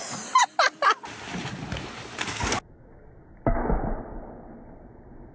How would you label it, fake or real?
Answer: real